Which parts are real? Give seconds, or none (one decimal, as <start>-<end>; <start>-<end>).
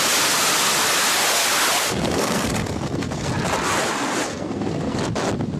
0.0-1.8; 3.3-4.3; 5.0-5.6